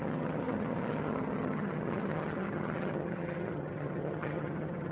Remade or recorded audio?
remade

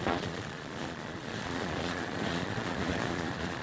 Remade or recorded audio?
remade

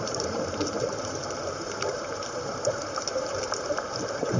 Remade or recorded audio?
remade